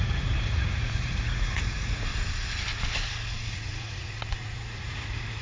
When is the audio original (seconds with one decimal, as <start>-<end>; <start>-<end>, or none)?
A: 2.1-3.5